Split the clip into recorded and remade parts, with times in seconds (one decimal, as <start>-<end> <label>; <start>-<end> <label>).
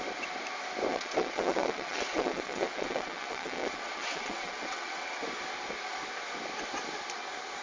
0.0-0.9 recorded; 0.9-5.2 remade; 5.2-7.6 recorded